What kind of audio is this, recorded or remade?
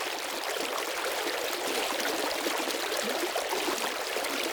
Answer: recorded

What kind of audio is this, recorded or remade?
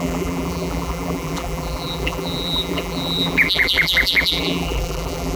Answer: remade